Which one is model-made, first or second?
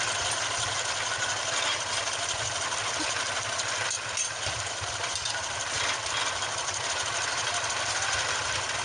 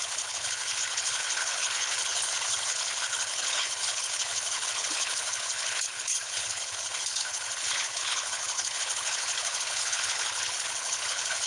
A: second